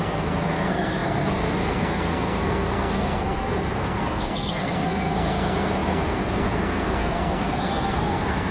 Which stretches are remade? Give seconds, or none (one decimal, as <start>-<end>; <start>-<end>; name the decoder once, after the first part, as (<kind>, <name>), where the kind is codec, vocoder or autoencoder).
0.0-8.5 (codec, SNAC)